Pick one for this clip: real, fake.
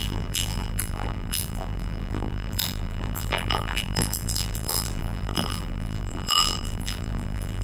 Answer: fake